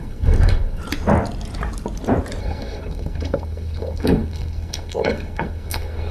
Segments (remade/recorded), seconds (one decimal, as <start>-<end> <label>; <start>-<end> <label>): 0.0-0.8 remade; 0.8-2.4 recorded; 2.4-6.1 remade